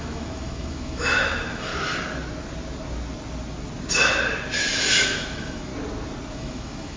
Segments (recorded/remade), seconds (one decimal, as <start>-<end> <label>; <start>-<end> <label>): 0.0-1.7 remade; 1.7-4.9 recorded; 4.9-5.7 remade; 5.7-6.3 recorded; 6.3-7.0 remade